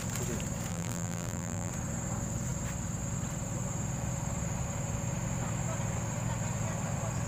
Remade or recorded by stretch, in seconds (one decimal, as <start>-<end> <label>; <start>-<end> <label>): 0.0-0.7 recorded; 0.7-1.7 remade; 1.7-7.3 recorded